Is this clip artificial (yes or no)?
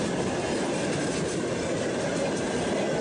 no